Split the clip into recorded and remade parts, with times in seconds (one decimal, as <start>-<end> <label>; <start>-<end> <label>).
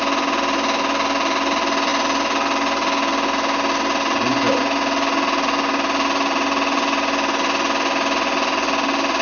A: 0.0-9.2 recorded